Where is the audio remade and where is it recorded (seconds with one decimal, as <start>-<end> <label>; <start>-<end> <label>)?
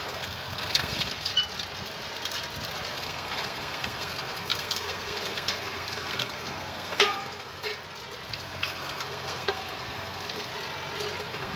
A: 0.0-1.3 remade; 1.3-2.9 recorded; 2.9-7.7 remade; 7.7-8.3 recorded; 8.3-10.5 remade; 10.5-11.2 recorded; 11.2-11.6 remade